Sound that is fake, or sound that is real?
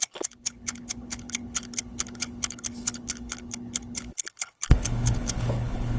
fake